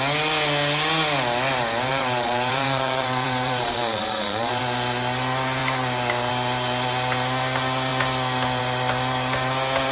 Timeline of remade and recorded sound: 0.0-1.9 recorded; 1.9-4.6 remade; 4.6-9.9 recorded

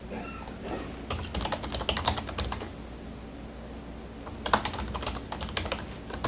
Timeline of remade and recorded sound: 0.0-6.3 recorded

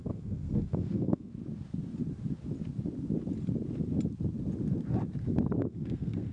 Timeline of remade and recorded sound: 0.0-1.3 remade; 1.3-5.6 recorded; 5.6-6.3 remade

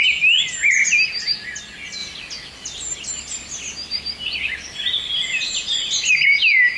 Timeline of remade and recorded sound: 0.0-6.8 recorded

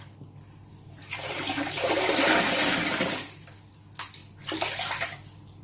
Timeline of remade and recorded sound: 0.0-5.6 recorded

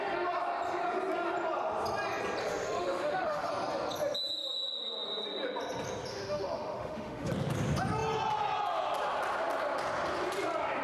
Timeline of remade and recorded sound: 0.0-2.4 recorded; 2.4-3.5 remade; 3.5-6.1 recorded; 6.1-7.3 remade; 7.3-10.8 recorded